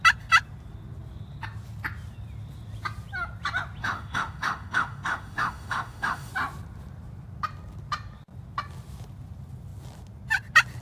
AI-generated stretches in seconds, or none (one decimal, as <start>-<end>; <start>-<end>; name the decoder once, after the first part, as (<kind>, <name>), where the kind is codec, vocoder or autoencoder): 3.8-6.3 (autoencoder, DAC-VAE)